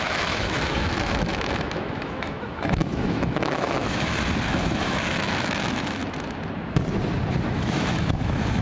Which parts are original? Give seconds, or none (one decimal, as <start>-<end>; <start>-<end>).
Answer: 4.1-4.6; 6.0-7.5